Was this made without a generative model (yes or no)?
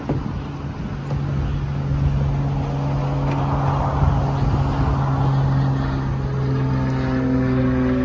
yes